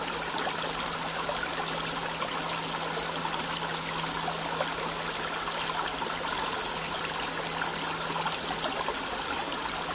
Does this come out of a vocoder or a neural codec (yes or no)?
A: no